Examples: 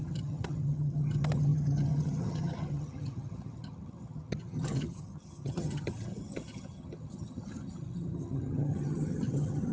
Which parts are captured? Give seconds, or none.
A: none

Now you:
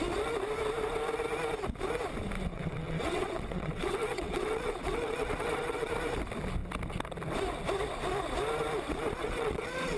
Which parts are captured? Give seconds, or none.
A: 0.0-2.5; 5.9-9.2

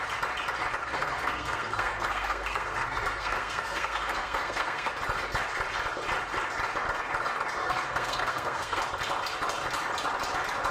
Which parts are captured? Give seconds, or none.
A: 0.0-0.8; 4.9-7.6; 8.8-10.7